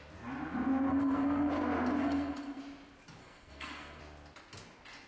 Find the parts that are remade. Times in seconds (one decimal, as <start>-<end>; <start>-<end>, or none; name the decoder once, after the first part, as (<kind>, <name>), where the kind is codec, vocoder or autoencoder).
0.9-1.5 (codec, SNAC); 2.0-2.6; 3.2-4.0